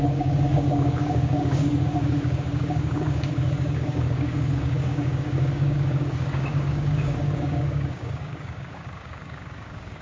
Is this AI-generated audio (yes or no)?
yes